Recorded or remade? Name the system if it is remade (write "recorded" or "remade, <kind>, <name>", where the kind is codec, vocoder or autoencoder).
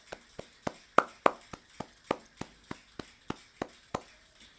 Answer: recorded